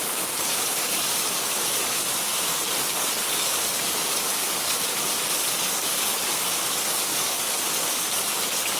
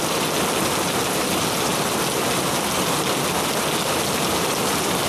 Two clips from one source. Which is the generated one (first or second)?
first